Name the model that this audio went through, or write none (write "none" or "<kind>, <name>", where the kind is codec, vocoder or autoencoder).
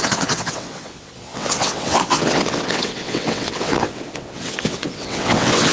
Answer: vocoder, WaveNeXt